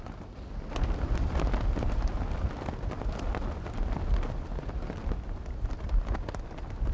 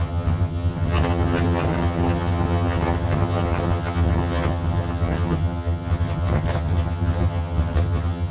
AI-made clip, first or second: second